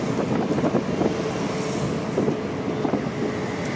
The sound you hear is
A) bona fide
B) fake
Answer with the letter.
A